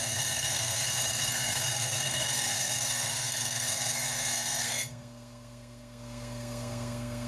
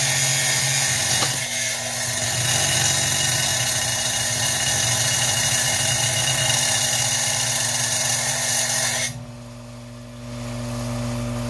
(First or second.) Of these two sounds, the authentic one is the second